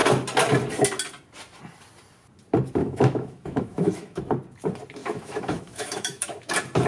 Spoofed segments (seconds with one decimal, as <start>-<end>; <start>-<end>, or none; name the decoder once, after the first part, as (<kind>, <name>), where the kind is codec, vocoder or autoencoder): 2.8-4.2 (autoencoder, DAC-VAE); 5.0-6.5